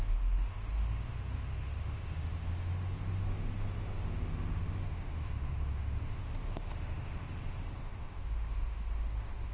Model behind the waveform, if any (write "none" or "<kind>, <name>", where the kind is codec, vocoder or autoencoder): autoencoder, DAC-VAE